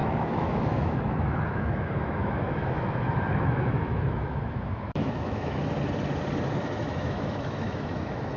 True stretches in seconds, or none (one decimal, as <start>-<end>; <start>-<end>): 5.6-6.6